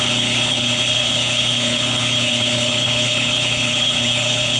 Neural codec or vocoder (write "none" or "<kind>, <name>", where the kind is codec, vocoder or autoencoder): codec, HILCodec